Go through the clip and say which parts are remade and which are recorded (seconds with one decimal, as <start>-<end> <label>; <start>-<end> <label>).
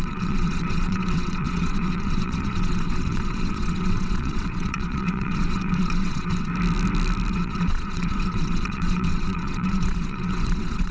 0.0-6.5 remade; 6.5-7.3 recorded; 7.3-10.9 remade